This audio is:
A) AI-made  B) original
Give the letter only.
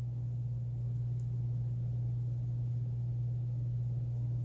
B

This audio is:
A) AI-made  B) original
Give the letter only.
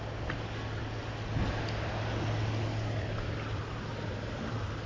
B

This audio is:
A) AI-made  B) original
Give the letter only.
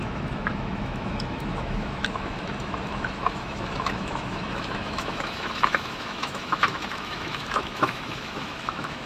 A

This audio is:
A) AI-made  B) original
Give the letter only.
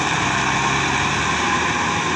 B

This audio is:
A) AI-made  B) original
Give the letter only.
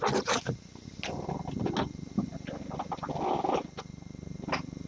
B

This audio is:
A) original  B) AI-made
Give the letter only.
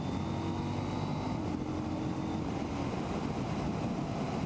A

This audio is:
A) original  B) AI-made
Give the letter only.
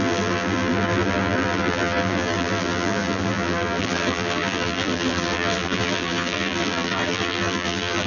B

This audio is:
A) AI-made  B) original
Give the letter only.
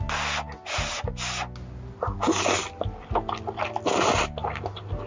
B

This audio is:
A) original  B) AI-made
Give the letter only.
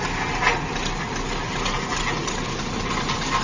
A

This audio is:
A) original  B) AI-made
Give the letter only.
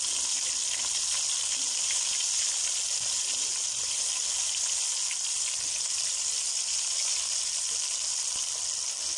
A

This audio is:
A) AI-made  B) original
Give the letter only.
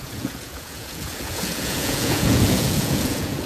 A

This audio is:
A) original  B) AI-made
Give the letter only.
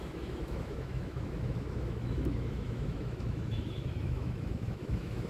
B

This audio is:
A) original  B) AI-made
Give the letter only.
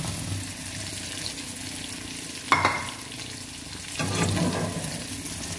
A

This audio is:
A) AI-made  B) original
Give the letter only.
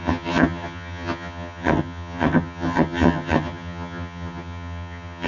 A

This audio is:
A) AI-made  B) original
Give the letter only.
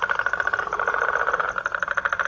B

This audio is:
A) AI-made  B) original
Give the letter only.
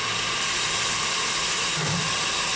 B